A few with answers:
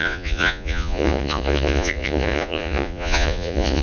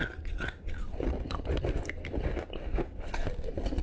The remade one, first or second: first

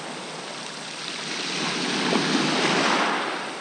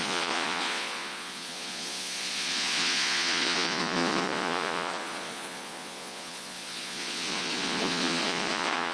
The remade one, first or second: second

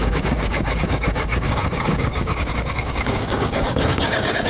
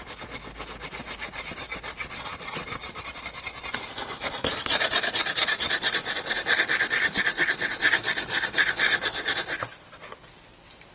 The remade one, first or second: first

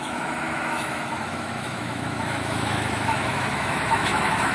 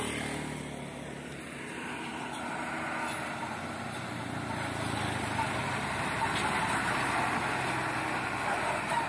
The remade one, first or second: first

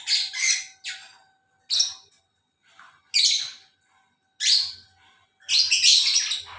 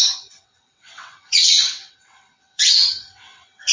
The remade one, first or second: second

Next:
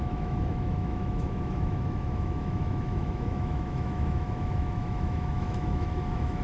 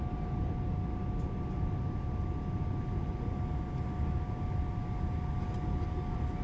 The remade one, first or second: first